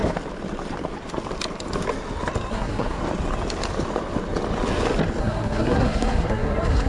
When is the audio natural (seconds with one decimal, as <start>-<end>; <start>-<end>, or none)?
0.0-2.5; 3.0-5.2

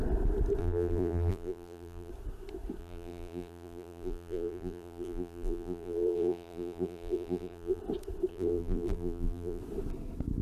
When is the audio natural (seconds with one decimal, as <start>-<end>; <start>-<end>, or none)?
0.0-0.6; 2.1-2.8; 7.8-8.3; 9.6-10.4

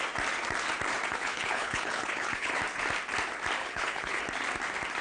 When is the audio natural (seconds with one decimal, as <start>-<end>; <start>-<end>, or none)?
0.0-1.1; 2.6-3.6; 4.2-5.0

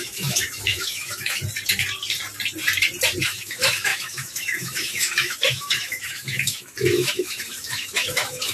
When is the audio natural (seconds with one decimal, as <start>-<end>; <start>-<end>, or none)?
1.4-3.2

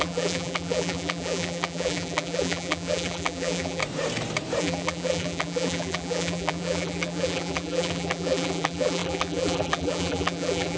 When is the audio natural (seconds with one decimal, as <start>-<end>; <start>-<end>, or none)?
3.8-4.6

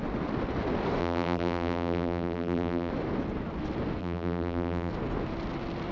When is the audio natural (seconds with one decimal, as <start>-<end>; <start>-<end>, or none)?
0.0-1.0; 2.9-4.0; 4.9-5.9

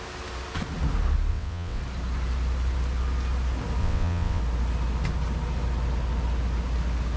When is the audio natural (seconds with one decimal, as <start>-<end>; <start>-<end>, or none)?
0.0-1.3; 1.8-3.8; 4.4-7.2